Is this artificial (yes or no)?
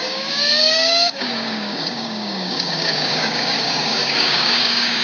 yes